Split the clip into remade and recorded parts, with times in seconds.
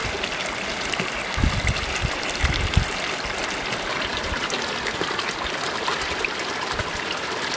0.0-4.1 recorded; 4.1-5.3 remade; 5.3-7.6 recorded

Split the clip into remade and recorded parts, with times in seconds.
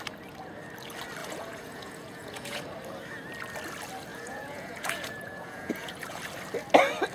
0.0-1.2 recorded; 1.2-2.6 remade; 2.6-4.1 recorded; 4.1-6.2 remade; 6.2-7.1 recorded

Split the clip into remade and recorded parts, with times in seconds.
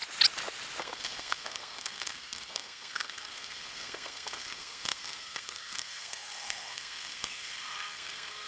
0.0-0.8 recorded; 0.8-8.5 remade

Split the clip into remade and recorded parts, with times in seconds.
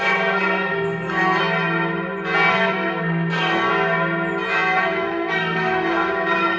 0.0-1.4 remade; 1.4-2.5 recorded; 2.5-3.7 remade; 3.7-4.8 recorded; 4.8-6.6 remade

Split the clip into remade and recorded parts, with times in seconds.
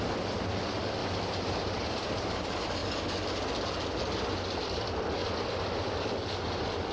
0.0-2.8 remade; 2.8-4.8 recorded; 4.8-5.2 remade; 5.2-6.5 recorded; 6.5-6.9 remade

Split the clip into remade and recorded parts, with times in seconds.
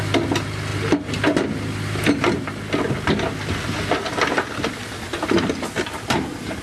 0.0-6.6 recorded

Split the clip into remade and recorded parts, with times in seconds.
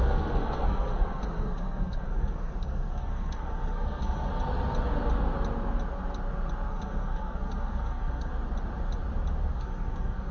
0.0-4.3 remade; 4.3-6.7 recorded; 6.7-8.3 remade; 8.3-9.5 recorded; 9.5-10.3 remade